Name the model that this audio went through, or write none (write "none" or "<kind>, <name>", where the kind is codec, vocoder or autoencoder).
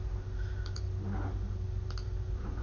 none